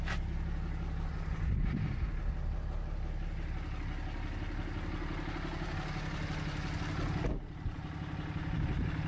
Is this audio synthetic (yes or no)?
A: no